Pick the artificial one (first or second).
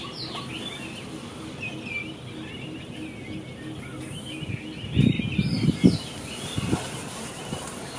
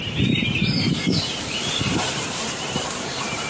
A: second